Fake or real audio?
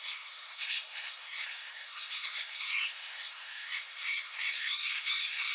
fake